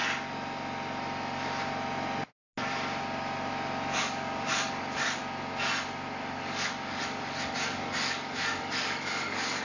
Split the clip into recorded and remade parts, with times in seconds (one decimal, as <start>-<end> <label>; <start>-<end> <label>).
0.0-4.0 recorded; 4.0-5.2 remade; 5.2-6.2 recorded; 6.2-9.6 remade